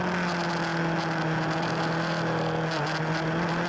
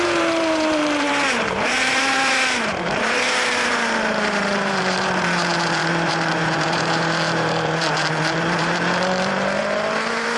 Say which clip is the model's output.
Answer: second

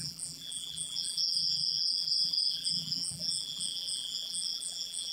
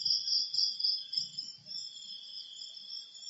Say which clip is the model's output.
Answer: first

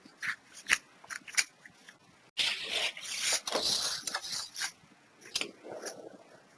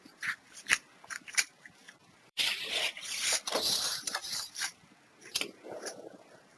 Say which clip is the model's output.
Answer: second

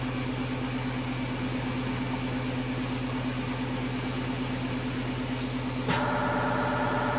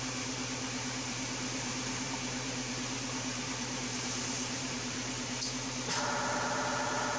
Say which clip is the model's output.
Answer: second